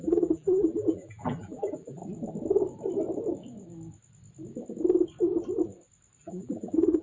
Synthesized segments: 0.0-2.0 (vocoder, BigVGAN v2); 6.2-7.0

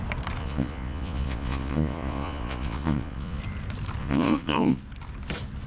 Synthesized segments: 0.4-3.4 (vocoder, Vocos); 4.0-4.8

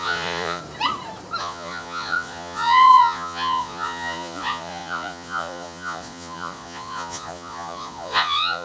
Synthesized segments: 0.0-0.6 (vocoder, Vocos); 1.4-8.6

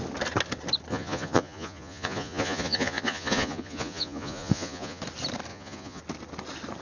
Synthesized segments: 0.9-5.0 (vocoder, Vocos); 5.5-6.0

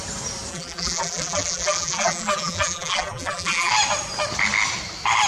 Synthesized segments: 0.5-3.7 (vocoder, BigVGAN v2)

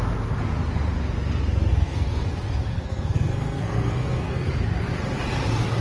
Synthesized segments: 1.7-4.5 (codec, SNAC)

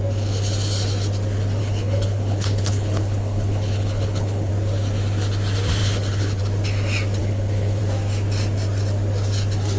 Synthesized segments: 1.6-4.5 (codec, HILCodec); 5.8-6.4; 7.2-7.8